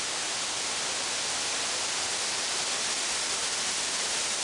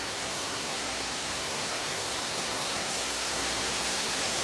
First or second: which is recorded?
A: first